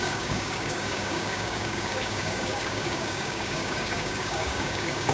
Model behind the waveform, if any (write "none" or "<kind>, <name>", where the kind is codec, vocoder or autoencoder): codec, DAC